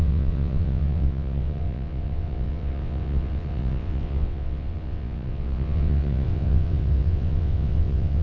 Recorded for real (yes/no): no